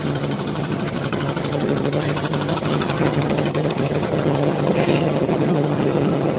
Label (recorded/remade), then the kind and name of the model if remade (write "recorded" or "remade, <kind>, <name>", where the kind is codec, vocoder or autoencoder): remade, vocoder, HiFi-GAN